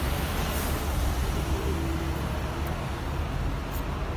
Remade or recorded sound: recorded